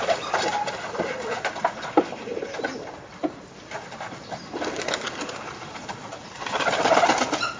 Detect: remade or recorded recorded